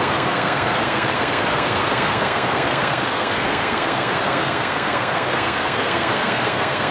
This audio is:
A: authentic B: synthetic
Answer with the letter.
B